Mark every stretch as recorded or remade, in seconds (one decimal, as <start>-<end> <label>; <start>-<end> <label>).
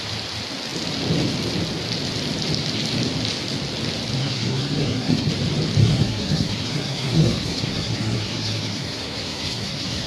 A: 0.0-4.2 recorded; 4.2-5.3 remade; 5.3-5.8 recorded; 5.8-10.1 remade